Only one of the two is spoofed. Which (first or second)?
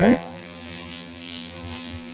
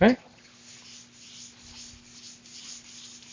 first